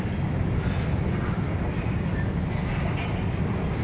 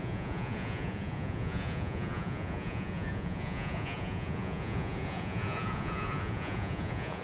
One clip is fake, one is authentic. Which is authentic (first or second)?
first